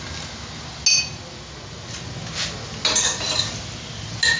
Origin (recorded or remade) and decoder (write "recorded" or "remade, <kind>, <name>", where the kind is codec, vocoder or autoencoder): recorded